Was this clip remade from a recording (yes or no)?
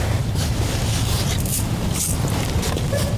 yes